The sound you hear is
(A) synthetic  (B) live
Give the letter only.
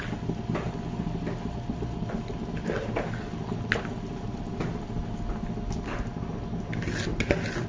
B